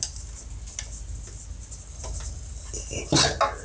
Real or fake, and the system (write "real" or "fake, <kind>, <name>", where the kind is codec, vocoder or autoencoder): real